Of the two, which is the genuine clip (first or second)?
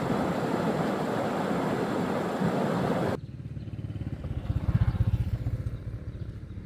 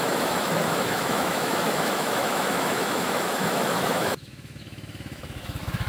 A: first